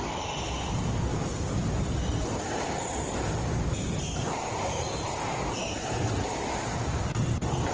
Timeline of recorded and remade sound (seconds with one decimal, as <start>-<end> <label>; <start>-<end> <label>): 0.0-1.1 recorded; 1.1-5.4 remade; 5.4-7.7 recorded